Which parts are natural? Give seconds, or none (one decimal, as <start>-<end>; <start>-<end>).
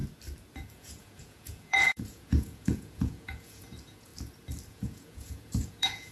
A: 0.0-0.7; 4.1-4.7